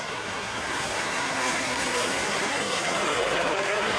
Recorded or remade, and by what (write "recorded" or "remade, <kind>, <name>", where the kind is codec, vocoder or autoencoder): remade, codec, SNAC